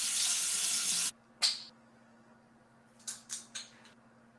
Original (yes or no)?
yes